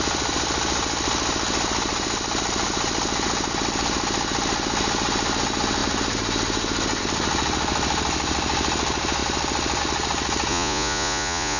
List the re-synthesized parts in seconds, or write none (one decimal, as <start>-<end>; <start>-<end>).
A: 10.5-11.6